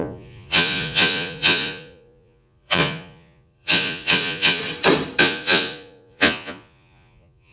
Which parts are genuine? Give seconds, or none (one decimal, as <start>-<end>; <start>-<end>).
4.6-5.2